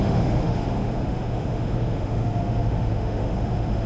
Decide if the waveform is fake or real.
fake